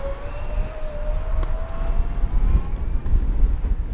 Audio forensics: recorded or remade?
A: recorded